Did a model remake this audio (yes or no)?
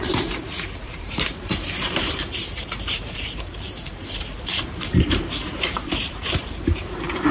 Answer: yes